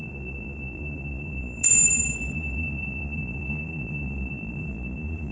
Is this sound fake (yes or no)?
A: yes